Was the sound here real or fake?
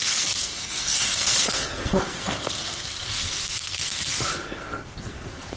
fake